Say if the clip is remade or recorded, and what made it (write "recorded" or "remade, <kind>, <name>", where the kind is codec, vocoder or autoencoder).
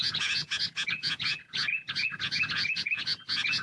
remade, vocoder, Vocos